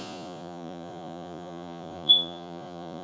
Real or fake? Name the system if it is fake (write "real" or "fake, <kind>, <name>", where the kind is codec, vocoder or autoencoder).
fake, vocoder, Vocos